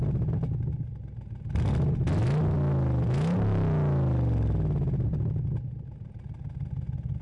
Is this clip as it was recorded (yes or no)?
yes